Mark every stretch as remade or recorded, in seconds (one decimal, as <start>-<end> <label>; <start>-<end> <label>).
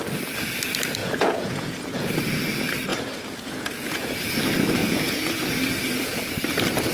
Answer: 0.0-1.0 recorded; 1.0-2.1 remade; 2.1-2.9 recorded; 2.9-4.2 remade; 4.2-4.8 recorded; 4.8-5.4 remade; 5.4-6.9 recorded